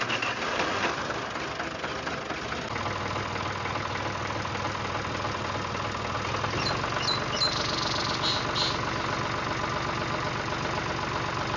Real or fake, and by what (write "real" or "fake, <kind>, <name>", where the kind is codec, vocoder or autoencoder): real